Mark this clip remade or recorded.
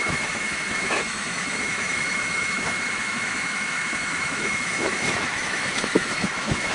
remade